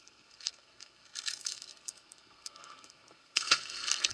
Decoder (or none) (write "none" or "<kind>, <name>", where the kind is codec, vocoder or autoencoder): codec, SNAC